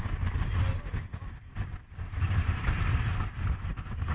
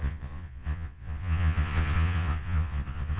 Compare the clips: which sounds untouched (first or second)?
first